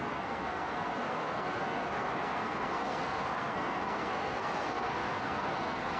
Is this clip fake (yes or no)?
yes